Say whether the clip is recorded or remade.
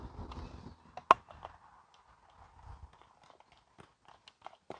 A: recorded